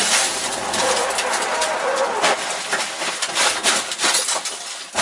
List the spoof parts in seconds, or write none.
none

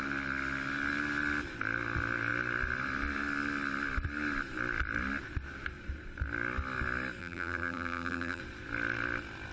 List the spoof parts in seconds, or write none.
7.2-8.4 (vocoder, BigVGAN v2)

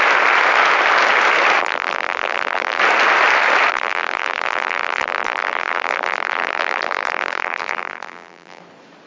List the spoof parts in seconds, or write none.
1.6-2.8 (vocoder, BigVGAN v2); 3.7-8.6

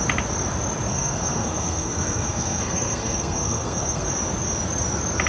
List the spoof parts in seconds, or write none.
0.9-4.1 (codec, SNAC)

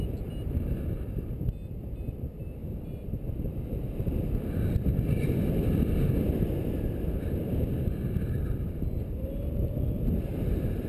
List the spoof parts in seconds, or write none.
none